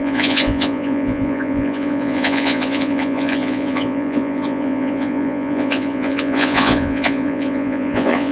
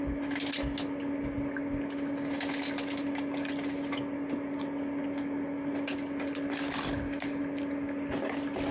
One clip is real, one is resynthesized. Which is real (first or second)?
second